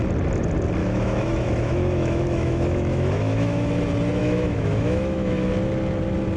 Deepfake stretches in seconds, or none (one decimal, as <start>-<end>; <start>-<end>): 0.8-3.7; 4.2-5.5